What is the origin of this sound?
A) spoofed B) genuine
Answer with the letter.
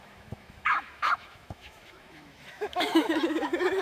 A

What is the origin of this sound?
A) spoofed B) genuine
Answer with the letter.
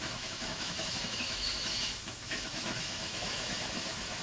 A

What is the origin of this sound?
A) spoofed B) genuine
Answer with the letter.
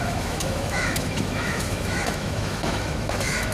A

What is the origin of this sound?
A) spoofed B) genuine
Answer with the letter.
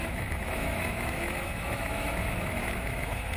A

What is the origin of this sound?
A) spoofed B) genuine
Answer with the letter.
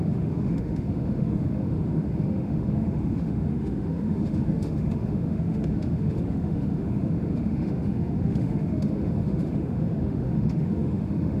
A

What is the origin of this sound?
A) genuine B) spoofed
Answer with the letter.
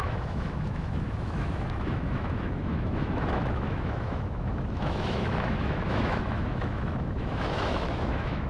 B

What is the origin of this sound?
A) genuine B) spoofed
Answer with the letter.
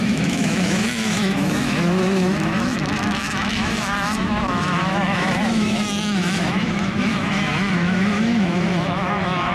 B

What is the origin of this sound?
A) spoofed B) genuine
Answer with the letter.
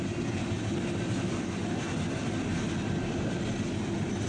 B